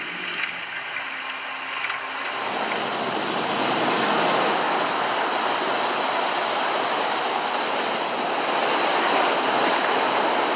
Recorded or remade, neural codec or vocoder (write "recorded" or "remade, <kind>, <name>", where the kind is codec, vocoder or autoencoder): recorded